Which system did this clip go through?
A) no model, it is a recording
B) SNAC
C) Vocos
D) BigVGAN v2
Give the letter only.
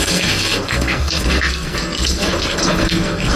B